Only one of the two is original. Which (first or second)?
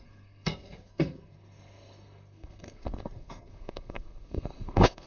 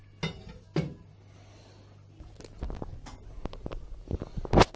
second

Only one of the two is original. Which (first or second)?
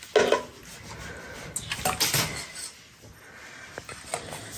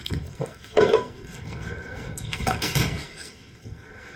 first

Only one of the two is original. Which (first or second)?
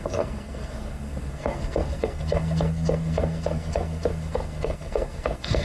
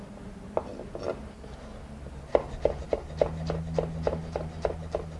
second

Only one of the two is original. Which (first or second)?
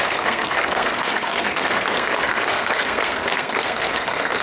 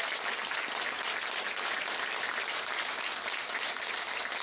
second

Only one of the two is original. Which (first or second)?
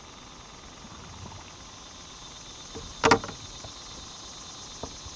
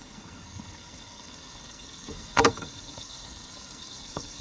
first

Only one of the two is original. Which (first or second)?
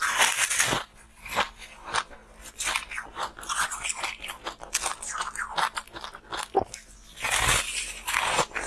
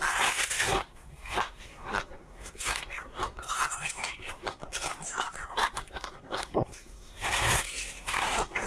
first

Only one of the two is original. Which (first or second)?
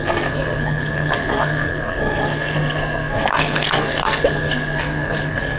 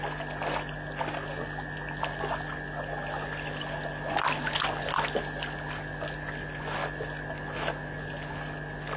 second